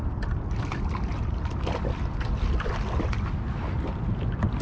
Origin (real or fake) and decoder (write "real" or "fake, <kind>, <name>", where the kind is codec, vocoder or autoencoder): real